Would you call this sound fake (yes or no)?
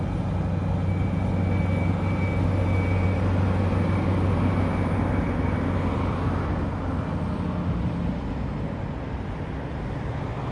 no